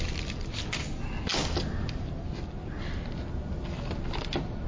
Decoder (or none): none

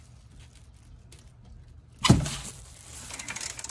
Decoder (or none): none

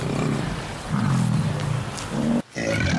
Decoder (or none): none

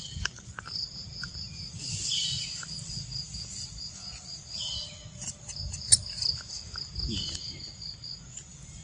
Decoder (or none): none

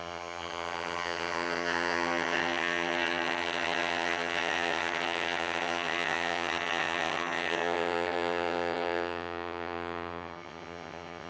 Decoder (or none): vocoder, HiFi-GAN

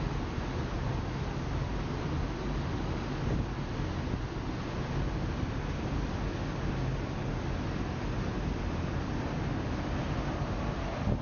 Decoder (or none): none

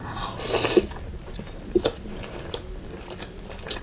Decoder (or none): vocoder, BigVGAN v2